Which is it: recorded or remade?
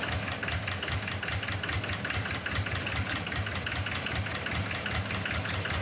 recorded